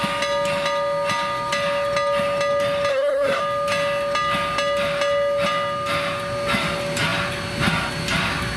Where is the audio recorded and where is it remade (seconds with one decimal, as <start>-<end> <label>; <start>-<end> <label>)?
0.0-2.9 recorded; 2.9-3.4 remade; 3.4-8.6 recorded